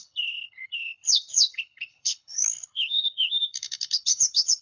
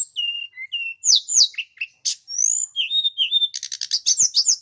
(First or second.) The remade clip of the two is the first